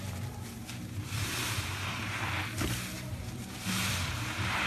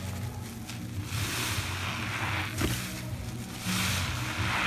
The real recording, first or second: second